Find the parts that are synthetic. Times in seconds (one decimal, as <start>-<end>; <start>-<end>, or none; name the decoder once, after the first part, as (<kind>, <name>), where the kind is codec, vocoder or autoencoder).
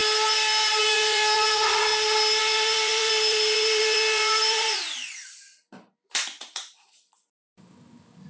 0.8-1.9 (vocoder, BigVGAN v2); 2.4-8.3